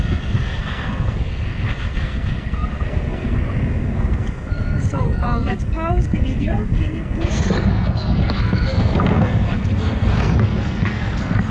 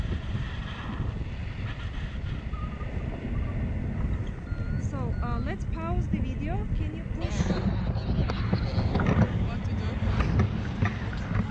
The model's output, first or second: first